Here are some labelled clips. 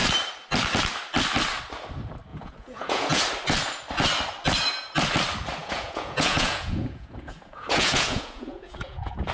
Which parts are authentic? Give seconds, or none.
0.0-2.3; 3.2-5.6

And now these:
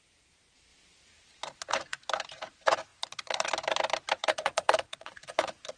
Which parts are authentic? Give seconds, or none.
0.0-2.9; 3.5-4.2

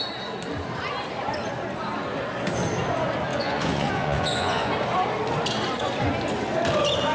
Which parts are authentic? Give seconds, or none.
0.0-3.3; 4.7-7.1